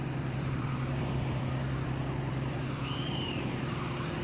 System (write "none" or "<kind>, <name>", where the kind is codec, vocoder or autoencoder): vocoder, BigVGAN v2